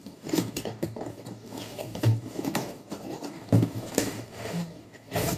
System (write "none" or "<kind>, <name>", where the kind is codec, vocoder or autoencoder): codec, DAC